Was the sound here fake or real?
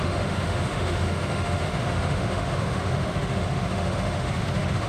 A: fake